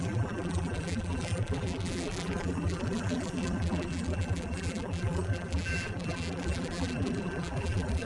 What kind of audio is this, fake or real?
fake